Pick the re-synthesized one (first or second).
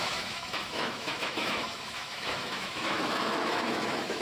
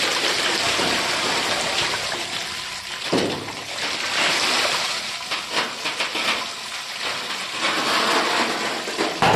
first